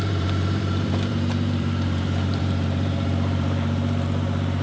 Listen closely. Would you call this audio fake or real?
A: fake